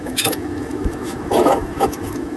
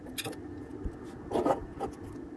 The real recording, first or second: second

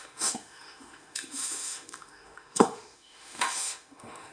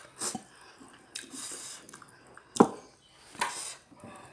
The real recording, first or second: second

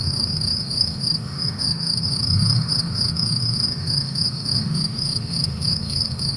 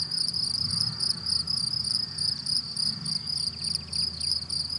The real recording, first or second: second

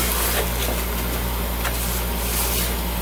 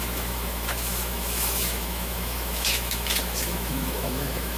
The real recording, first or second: first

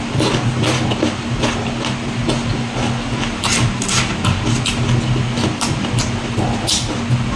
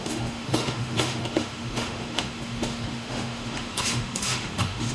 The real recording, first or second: first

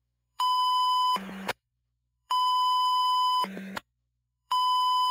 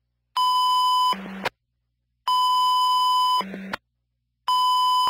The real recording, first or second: second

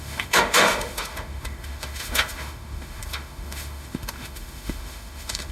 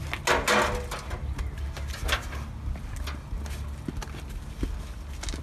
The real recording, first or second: second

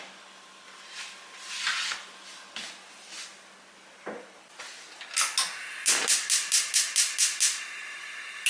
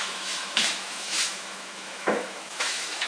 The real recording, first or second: first